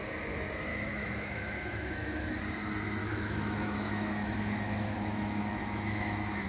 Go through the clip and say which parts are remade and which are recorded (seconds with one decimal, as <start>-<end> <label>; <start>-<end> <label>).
0.0-0.7 recorded; 0.7-2.4 remade; 2.4-3.0 recorded; 3.0-6.5 remade